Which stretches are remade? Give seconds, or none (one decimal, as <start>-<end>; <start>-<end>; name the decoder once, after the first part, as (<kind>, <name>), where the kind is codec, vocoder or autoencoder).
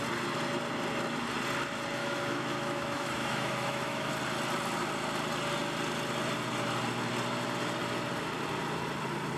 2.0-4.1 (autoencoder, DAC-VAE)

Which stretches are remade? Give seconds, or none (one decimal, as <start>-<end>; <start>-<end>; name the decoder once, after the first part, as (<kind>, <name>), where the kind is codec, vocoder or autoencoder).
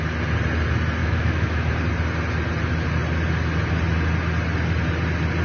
1.0-1.7 (autoencoder, DAC-VAE)